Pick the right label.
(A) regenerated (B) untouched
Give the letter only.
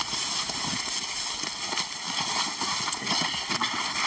B